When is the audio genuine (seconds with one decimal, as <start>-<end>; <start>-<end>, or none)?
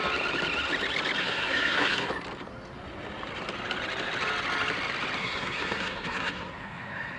0.0-1.2; 2.1-5.2